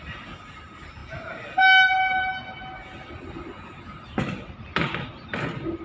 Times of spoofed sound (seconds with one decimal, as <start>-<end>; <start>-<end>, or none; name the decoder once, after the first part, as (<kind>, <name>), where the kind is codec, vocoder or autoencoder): none